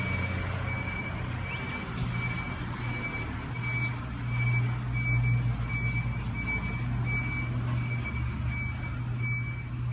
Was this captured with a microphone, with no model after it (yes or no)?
yes